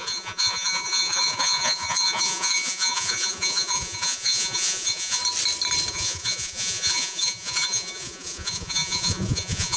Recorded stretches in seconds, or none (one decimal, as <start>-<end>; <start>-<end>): 5.2-5.9

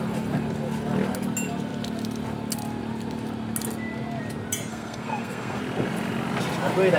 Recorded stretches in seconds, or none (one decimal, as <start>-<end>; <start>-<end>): 0.0-4.7; 5.6-7.0